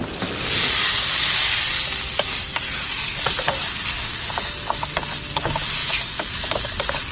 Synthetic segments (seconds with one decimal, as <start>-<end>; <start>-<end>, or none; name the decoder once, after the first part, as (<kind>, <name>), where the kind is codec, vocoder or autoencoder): none